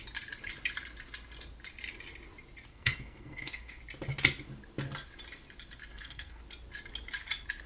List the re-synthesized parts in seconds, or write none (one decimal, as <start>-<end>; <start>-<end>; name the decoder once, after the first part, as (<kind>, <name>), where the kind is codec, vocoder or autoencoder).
2.7-3.8 (codec, SNAC); 5.9-6.4